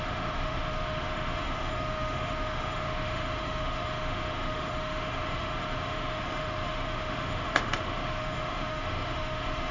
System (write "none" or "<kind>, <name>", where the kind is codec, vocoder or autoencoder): autoencoder, DAC-VAE